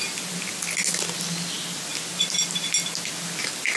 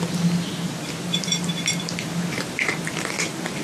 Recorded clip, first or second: first